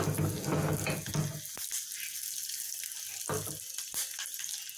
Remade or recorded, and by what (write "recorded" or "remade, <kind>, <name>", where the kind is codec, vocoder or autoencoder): recorded